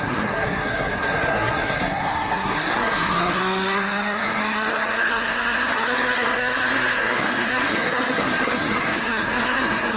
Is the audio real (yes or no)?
no